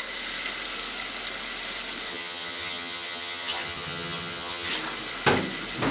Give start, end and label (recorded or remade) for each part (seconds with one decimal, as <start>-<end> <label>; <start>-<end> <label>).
0.0-2.1 recorded; 2.1-4.7 remade; 4.7-5.9 recorded